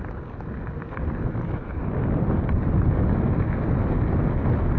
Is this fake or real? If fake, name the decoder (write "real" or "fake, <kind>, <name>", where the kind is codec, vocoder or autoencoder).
real